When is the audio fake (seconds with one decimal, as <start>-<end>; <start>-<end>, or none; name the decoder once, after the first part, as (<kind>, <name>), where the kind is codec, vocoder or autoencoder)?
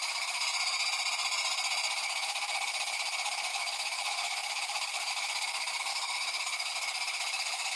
3.5-5.1 (autoencoder, DAC-VAE); 5.9-6.7